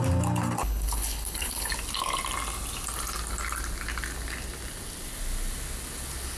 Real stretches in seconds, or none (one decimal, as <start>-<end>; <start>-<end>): 0.0-0.6; 1.7-6.4